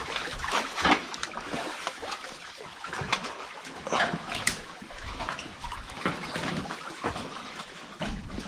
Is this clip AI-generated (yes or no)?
yes